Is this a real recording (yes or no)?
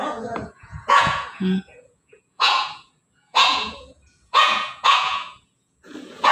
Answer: no